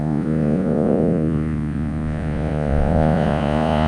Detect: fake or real fake